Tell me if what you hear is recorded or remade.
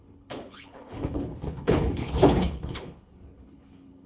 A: remade